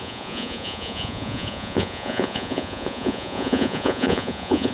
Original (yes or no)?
no